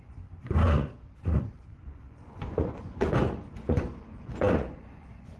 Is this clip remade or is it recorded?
remade